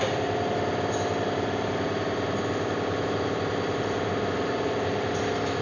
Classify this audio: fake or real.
real